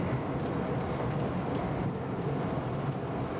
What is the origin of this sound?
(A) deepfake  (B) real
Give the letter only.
B